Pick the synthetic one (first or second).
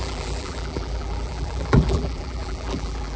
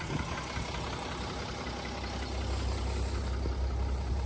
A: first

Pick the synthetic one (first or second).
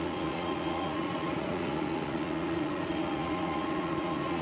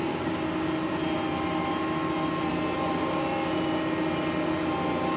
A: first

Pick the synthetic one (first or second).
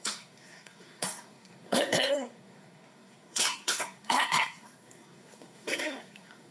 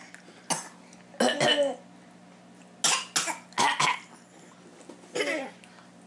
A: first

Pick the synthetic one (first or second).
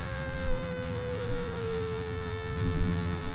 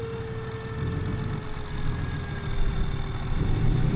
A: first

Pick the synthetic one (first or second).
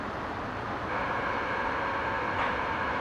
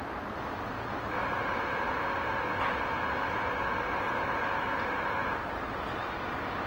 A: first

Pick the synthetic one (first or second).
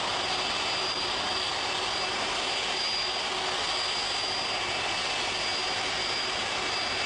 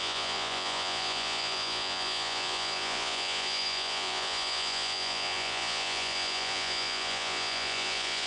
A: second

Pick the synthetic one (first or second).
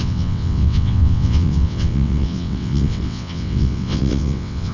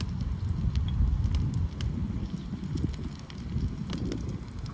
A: first